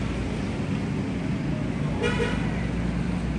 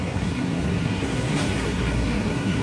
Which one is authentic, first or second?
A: first